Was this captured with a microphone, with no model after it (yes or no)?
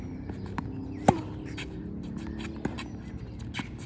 yes